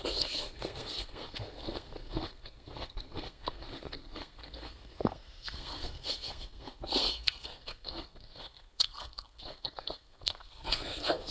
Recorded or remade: remade